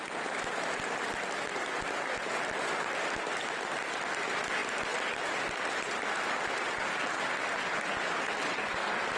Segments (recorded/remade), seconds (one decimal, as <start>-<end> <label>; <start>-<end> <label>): 0.0-9.2 recorded